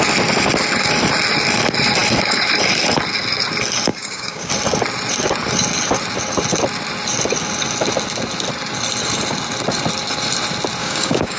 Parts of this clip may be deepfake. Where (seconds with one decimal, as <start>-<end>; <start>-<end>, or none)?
3.9-4.5; 10.8-11.4